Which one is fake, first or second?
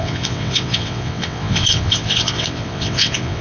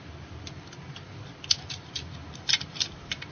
first